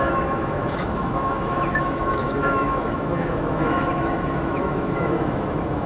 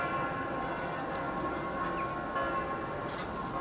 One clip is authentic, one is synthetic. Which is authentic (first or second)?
second